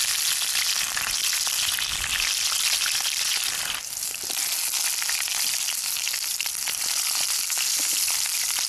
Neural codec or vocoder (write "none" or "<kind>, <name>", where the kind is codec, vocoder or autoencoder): none